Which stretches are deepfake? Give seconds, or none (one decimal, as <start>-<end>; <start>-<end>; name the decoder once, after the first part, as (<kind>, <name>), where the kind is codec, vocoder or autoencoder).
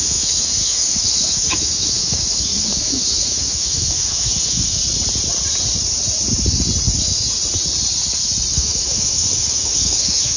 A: 0.0-4.8 (autoencoder, DAC-VAE); 8.5-10.4